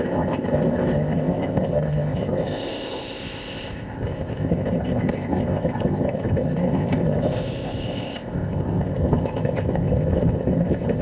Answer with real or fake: fake